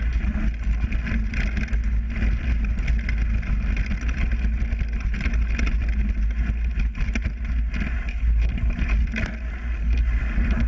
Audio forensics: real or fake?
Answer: real